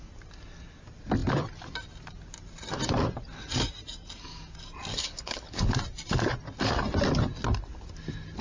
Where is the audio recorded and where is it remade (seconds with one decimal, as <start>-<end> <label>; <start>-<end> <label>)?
0.0-4.9 recorded; 4.9-5.7 remade; 5.7-8.4 recorded